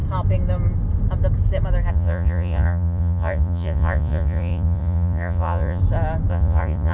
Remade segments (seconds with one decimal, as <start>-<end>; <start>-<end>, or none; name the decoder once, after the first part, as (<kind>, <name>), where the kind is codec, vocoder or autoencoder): 1.9-5.8 (vocoder, Vocos); 6.3-6.9